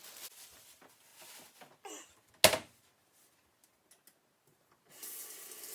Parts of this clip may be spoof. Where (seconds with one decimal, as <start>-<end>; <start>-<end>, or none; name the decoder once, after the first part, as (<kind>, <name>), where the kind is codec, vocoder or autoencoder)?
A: none